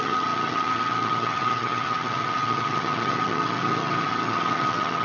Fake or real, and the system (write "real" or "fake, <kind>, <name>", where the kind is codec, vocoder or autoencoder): fake, vocoder, HiFi-GAN